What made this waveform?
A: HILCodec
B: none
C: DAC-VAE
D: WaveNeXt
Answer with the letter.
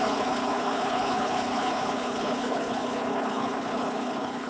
A